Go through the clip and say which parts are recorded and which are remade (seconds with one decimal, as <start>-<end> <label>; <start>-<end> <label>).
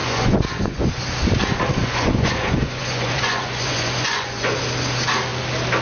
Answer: 0.0-0.9 remade; 0.9-1.8 recorded; 1.8-4.6 remade; 4.6-5.8 recorded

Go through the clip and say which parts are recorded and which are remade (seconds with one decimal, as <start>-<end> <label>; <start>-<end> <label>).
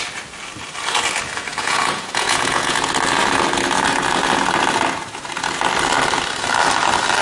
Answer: 0.0-1.5 recorded; 1.5-2.9 remade; 2.9-7.2 recorded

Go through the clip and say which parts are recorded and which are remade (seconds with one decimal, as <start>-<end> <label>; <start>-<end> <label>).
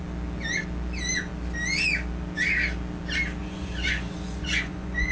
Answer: 0.0-3.4 recorded; 3.4-5.1 remade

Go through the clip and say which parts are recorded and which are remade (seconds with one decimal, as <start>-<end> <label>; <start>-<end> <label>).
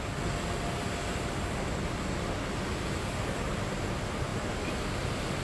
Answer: 0.0-5.4 recorded